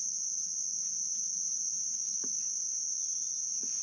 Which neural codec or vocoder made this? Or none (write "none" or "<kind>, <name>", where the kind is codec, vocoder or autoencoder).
none